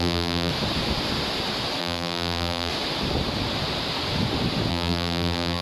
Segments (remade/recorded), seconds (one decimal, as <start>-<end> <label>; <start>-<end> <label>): 0.0-0.5 remade; 0.5-1.8 recorded; 1.8-2.7 remade; 2.7-4.7 recorded; 4.7-5.6 remade